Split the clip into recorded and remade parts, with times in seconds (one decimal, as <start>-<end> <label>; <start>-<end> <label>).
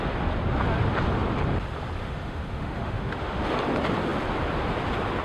0.0-2.0 recorded; 2.0-3.4 remade; 3.4-5.2 recorded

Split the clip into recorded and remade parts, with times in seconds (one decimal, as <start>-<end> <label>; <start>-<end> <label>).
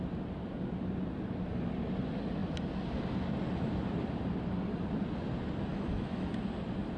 0.0-5.7 recorded; 5.7-6.3 remade; 6.3-7.0 recorded